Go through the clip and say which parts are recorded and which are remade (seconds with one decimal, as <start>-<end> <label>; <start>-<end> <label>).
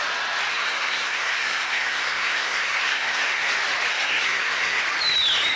0.0-0.5 recorded; 0.5-3.5 remade; 3.5-3.9 recorded; 3.9-4.8 remade; 4.8-5.6 recorded